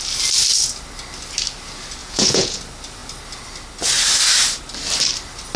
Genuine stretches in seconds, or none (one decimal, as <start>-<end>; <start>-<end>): 0.0-2.0; 2.6-5.6